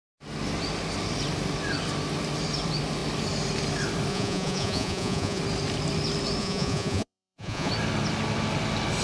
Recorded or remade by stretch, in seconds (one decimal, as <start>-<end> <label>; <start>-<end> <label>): 0.0-4.1 recorded; 4.1-5.4 remade; 5.4-6.4 recorded; 6.4-7.7 remade; 7.7-9.0 recorded